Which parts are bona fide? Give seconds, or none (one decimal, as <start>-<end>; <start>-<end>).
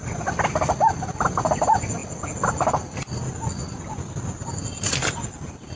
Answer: 0.0-5.8